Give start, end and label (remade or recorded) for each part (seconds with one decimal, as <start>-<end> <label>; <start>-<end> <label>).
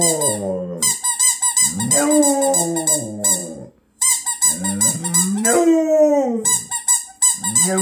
0.0-3.4 recorded; 3.4-7.2 remade; 7.2-7.8 recorded